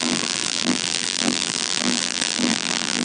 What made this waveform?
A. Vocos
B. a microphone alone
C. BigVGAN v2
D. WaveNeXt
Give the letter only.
C